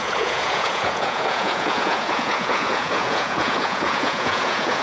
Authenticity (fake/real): fake